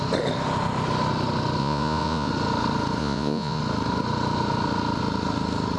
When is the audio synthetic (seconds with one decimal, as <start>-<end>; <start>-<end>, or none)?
1.6-2.3; 3.0-3.6